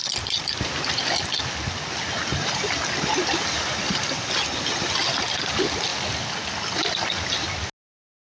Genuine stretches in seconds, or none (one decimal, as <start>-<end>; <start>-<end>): 0.0-8.3